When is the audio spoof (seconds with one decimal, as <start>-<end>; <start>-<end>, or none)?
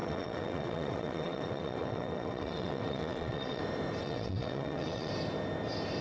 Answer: 0.0-3.6; 4.0-5.1